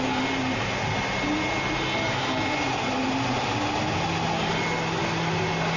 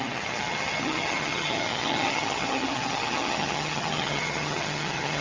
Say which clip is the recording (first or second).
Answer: first